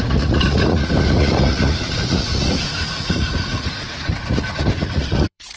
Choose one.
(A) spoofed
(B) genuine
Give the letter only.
A